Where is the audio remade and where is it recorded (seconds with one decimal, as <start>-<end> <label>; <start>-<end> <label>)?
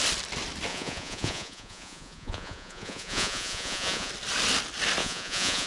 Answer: 0.0-0.7 recorded; 0.7-4.1 remade; 4.1-5.0 recorded; 5.0-5.7 remade